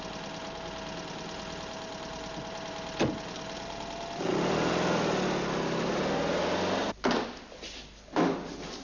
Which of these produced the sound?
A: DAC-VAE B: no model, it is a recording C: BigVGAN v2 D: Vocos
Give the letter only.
B